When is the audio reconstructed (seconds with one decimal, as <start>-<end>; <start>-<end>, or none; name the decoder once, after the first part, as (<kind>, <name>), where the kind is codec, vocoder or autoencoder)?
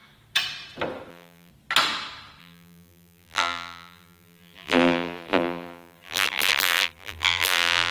1.1-1.5 (vocoder, BigVGAN v2); 2.4-7.9